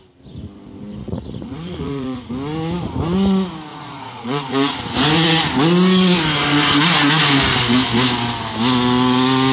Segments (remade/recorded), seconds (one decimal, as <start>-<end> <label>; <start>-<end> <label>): 0.0-1.0 recorded; 1.0-2.3 remade; 2.3-3.7 recorded; 3.7-4.8 remade; 4.8-9.5 recorded